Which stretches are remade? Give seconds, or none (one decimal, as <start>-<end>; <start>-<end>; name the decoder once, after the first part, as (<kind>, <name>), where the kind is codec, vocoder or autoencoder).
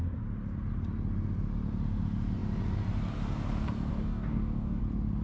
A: 3.9-4.8 (codec, DAC)